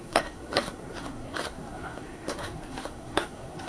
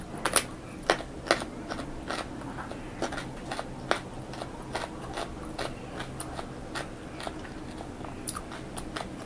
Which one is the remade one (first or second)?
first